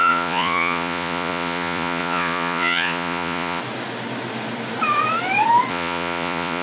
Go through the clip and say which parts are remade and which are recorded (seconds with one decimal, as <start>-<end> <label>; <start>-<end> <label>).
0.0-3.6 remade; 3.6-5.7 recorded; 5.7-6.6 remade